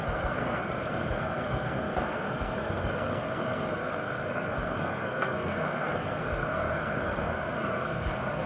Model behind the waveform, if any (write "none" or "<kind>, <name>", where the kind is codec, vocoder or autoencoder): codec, SNAC